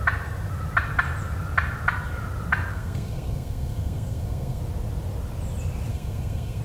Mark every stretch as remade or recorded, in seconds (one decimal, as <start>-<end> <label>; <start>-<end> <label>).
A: 0.0-2.7 recorded; 2.7-4.6 remade; 4.6-5.9 recorded; 5.9-6.6 remade